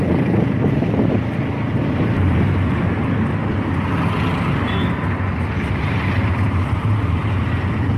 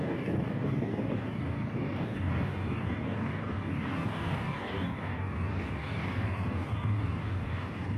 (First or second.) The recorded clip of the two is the first